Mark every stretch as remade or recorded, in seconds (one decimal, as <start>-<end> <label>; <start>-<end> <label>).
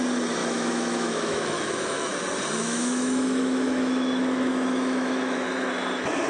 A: 0.0-0.4 recorded; 0.4-2.1 remade; 2.1-2.6 recorded; 2.6-5.5 remade; 5.5-6.3 recorded